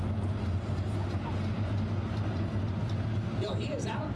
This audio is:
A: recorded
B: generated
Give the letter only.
A